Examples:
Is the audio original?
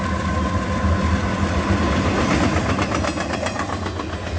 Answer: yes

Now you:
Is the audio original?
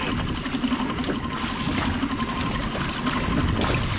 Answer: yes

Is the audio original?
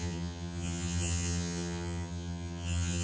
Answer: no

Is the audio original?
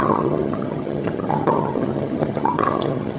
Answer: no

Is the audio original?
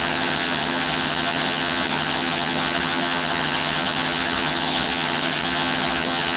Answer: no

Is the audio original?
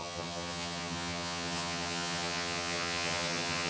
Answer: no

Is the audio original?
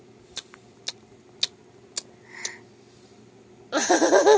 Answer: yes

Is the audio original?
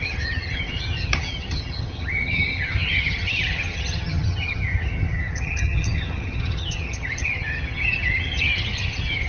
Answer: no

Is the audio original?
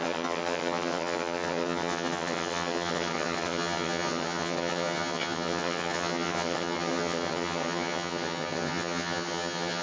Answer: no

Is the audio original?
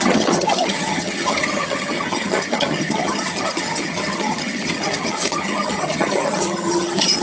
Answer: no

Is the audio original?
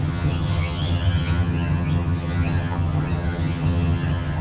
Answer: no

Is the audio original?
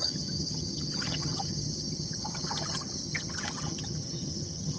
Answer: no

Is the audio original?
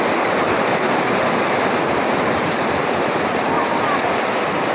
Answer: yes